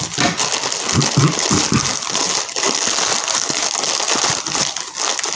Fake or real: real